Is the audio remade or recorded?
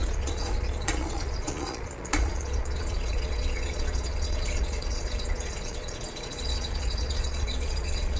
remade